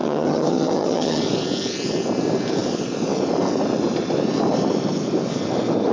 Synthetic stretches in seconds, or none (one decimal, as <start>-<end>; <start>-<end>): 0.0-1.2